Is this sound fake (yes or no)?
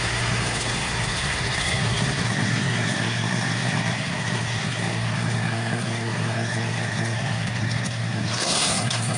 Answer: yes